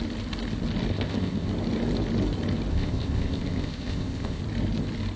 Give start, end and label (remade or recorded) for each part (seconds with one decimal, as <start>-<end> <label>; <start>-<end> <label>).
0.0-0.9 recorded; 0.9-1.5 remade; 1.5-2.7 recorded; 2.7-4.4 remade; 4.4-5.2 recorded

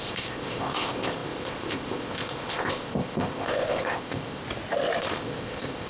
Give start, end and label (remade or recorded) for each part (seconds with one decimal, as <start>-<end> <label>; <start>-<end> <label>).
0.0-4.4 remade; 4.4-5.0 recorded; 5.0-5.9 remade